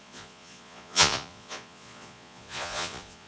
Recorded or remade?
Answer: remade